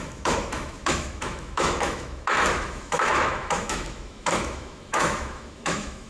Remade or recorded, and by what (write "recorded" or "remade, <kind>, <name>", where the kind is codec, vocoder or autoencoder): remade, autoencoder, DAC-VAE